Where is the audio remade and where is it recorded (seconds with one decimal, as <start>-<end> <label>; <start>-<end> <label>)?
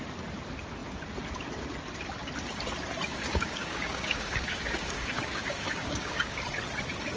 0.0-3.1 recorded; 3.1-6.4 remade; 6.4-7.2 recorded